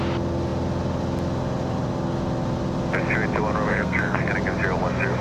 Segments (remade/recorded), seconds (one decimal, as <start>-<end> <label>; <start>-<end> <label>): 0.0-3.7 recorded; 3.7-4.3 remade; 4.3-5.2 recorded